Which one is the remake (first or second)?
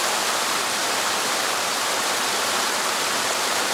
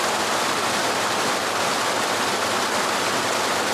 first